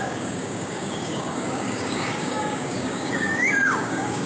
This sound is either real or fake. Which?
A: fake